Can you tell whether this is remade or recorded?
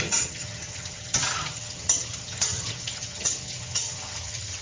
remade